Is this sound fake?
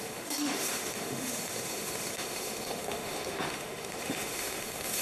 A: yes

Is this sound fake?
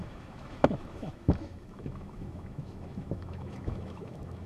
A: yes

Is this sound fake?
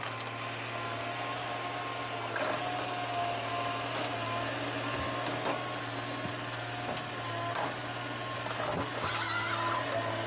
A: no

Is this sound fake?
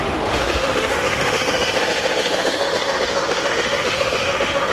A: yes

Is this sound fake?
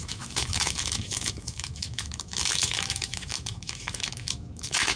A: yes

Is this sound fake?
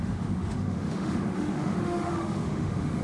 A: yes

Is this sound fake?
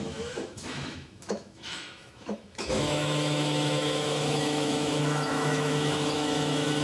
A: yes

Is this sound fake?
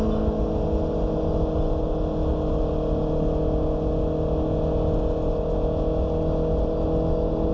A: no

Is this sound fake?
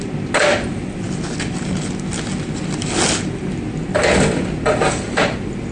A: no